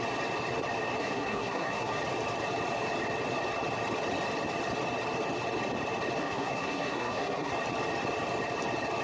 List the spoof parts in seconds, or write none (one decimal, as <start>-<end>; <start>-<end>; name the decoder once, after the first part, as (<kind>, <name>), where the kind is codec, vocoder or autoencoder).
1.0-2.0 (codec, SNAC); 6.2-7.5